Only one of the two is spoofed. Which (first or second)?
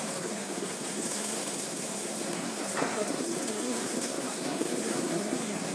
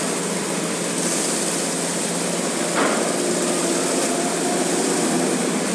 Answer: first